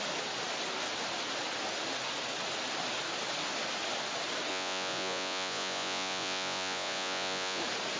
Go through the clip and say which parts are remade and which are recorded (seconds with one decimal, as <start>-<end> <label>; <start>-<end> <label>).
0.0-4.5 recorded; 4.5-7.6 remade; 7.6-8.0 recorded